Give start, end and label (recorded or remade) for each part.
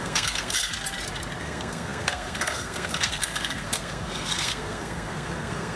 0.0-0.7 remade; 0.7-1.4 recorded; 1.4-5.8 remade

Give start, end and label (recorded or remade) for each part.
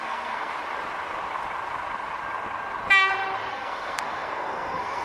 0.0-0.5 remade; 0.5-3.5 recorded; 3.5-5.0 remade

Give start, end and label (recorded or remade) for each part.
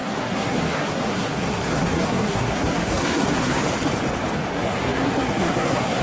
0.0-3.6 remade; 3.6-4.5 recorded; 4.5-6.0 remade